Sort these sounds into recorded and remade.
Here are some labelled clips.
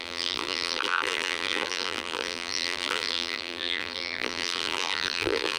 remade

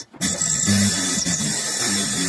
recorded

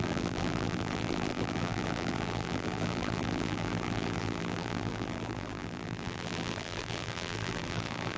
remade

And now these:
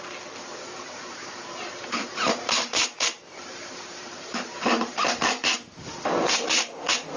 remade